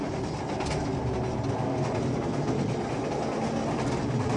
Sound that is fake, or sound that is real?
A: real